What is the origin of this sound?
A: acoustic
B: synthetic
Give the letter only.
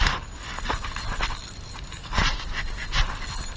A